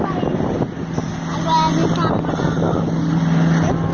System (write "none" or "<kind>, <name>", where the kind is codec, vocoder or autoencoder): none